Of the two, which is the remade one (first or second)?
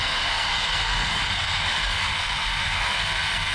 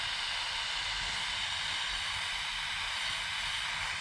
first